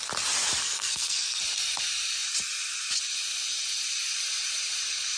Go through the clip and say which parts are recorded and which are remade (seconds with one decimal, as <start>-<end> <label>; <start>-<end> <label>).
0.0-0.6 recorded; 0.6-1.4 remade; 1.4-5.2 recorded